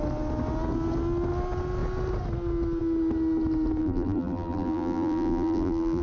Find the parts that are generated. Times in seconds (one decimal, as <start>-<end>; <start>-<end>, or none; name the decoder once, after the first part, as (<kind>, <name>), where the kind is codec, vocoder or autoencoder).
3.8-6.0 (vocoder, BigVGAN v2)